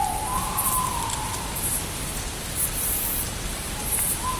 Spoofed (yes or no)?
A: no